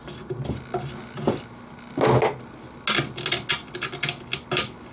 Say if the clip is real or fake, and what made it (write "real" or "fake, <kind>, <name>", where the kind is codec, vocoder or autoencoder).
real